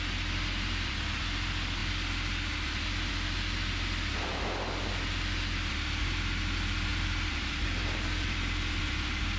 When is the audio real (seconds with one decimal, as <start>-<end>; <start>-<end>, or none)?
0.0-6.9; 8.8-9.4